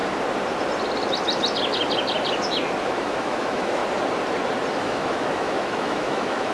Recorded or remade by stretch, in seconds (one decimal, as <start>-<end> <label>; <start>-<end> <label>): 0.0-2.8 recorded; 2.8-3.8 remade; 3.8-4.8 recorded; 4.8-6.5 remade